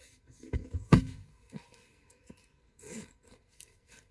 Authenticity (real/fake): fake